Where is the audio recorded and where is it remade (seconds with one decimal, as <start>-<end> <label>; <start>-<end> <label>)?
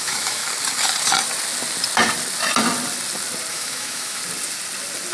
0.0-0.4 remade; 0.4-3.5 recorded; 3.5-4.2 remade; 4.2-5.1 recorded